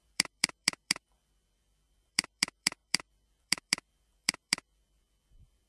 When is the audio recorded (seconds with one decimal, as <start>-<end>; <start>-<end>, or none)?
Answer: none